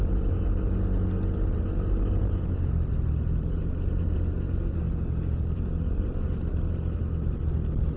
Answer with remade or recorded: recorded